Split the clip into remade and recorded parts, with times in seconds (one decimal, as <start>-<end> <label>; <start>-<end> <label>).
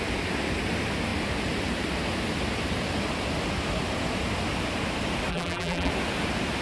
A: 0.0-5.3 recorded; 5.3-5.9 remade; 5.9-6.6 recorded